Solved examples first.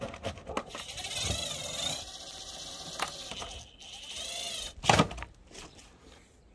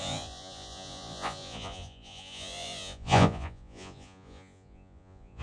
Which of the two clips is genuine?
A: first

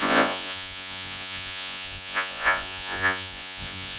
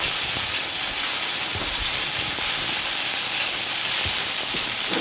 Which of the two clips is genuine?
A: second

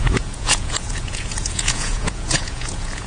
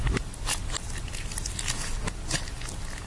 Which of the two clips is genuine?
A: second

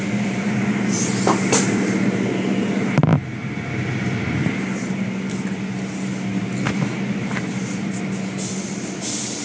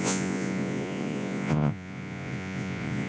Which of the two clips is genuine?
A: first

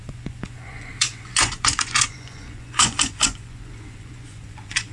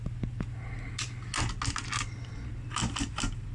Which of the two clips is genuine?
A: second